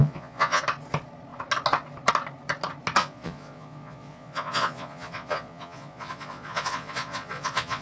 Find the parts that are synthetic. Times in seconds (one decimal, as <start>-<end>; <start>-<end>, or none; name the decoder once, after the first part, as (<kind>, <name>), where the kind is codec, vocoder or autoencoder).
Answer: 0.0-0.6 (vocoder, Vocos); 3.0-7.8